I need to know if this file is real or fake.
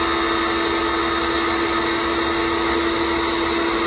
real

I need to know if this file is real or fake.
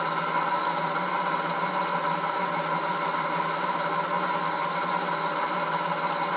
real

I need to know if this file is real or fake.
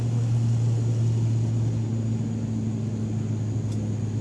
real